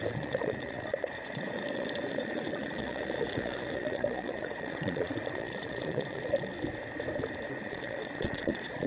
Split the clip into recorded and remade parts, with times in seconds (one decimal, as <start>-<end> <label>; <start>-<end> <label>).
0.0-6.5 remade; 6.5-7.5 recorded; 7.5-8.9 remade